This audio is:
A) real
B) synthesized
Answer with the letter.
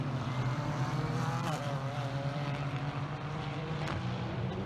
B